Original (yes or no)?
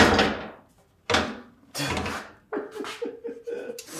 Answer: yes